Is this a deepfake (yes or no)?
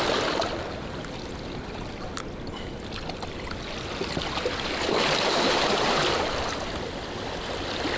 no